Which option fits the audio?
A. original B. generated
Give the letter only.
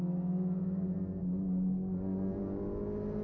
A